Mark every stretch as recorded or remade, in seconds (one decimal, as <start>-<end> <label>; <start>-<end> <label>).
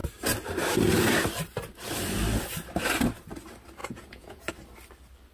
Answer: 0.0-3.8 recorded; 3.8-4.5 remade; 4.5-5.3 recorded